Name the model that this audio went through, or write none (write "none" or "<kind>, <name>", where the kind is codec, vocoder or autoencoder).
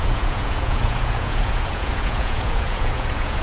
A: vocoder, Vocos